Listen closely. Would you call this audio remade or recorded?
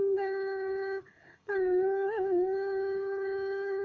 remade